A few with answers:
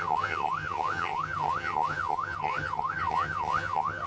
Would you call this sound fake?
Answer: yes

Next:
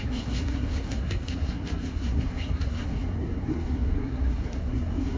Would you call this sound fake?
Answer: yes